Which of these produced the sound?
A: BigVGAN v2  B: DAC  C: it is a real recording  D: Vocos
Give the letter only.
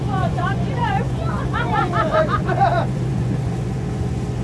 D